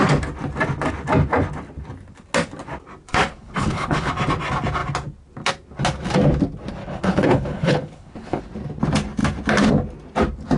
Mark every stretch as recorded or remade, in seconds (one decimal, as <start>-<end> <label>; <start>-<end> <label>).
0.0-3.3 recorded; 3.3-4.1 remade; 4.1-6.8 recorded; 6.8-8.4 remade; 8.4-10.6 recorded